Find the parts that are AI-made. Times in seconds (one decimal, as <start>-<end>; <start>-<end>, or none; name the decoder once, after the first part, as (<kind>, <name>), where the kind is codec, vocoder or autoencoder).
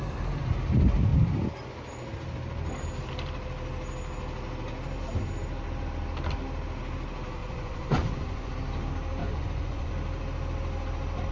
7.4-8.5 (vocoder, Vocos); 9.2-9.9